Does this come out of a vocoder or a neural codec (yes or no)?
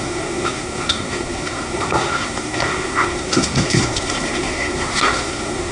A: yes